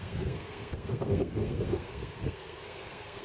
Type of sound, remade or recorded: remade